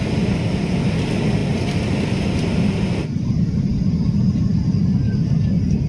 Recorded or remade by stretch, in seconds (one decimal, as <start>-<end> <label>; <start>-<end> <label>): 0.0-5.9 recorded